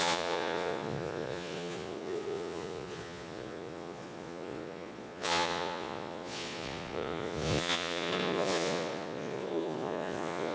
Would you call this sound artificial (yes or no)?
yes